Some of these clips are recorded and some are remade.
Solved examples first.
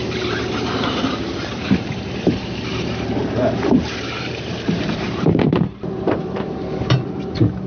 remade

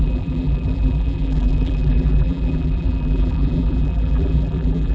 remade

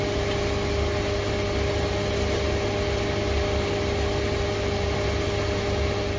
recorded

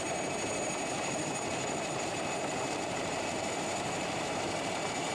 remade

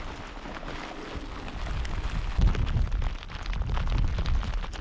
recorded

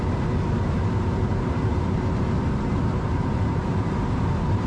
remade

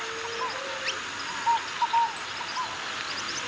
recorded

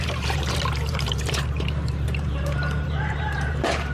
remade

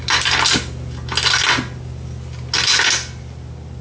recorded